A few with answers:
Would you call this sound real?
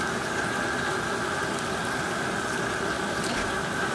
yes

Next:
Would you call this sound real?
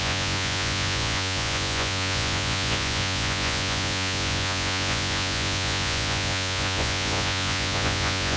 no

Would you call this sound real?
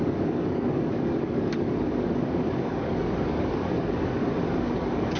no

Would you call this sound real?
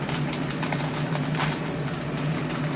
yes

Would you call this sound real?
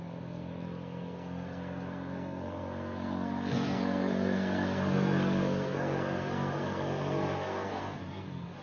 no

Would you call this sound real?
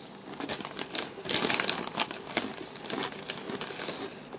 yes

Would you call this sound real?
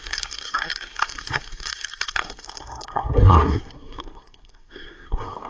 no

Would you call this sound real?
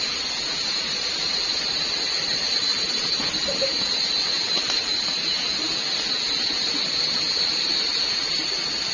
yes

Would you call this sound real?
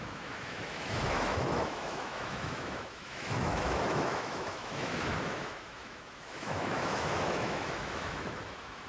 no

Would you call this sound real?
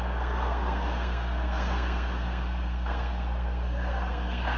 no